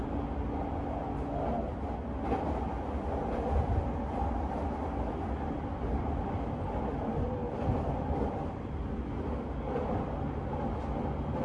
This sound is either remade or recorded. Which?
recorded